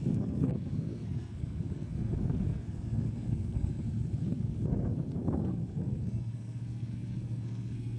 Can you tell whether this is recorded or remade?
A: remade